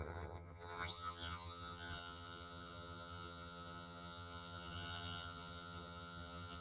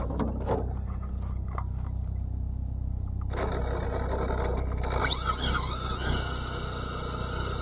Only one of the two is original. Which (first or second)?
second